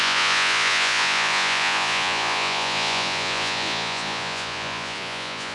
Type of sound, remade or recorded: remade